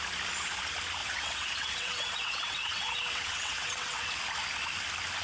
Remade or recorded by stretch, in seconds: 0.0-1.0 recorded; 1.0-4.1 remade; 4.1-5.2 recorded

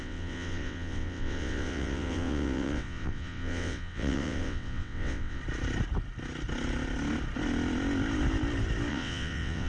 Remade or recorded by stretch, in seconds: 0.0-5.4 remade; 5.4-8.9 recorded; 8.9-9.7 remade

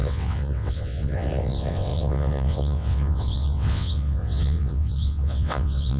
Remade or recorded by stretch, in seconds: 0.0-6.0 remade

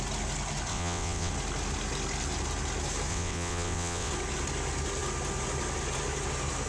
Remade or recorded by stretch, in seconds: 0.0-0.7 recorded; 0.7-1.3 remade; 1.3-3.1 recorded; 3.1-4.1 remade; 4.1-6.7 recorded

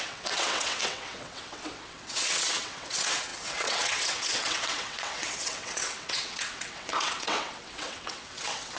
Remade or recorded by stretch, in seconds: 0.0-8.8 remade

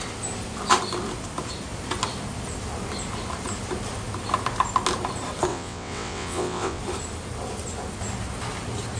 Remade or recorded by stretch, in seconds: 0.0-5.5 recorded; 5.5-6.8 remade; 6.8-9.0 recorded